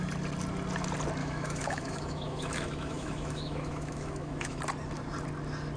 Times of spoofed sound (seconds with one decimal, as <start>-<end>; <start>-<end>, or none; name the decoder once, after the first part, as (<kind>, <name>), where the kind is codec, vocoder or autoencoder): 1.2-4.6 (autoencoder, DAC-VAE)